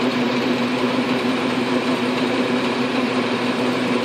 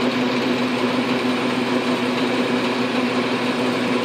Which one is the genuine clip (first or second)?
second